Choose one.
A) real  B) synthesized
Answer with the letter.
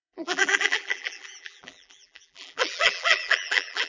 B